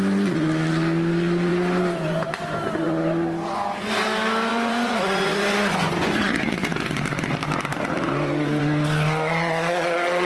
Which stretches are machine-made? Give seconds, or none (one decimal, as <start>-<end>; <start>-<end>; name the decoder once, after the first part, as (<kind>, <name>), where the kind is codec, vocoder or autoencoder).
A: 4.5-6.7 (vocoder, Vocos)